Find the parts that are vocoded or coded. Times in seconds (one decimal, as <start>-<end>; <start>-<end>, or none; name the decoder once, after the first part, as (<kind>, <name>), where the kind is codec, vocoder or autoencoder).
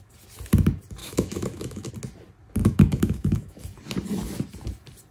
1.0-1.9 (autoencoder, DAC-VAE); 2.6-3.6